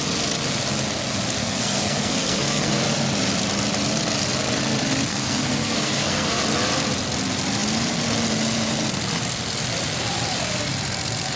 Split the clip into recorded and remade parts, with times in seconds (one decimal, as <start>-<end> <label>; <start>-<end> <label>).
0.0-1.4 recorded; 1.4-2.8 remade; 2.8-5.1 recorded; 5.1-6.4 remade; 6.4-11.4 recorded